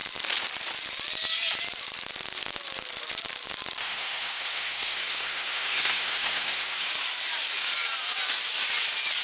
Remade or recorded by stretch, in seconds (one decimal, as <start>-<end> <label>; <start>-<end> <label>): 0.0-3.8 recorded; 3.8-6.9 remade; 6.9-9.2 recorded